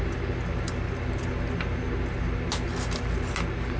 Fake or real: real